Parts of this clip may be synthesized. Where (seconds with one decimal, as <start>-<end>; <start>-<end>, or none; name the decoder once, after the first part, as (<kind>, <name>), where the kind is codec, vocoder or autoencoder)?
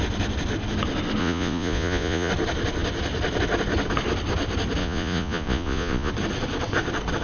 1.2-2.3 (vocoder, Vocos); 4.8-6.1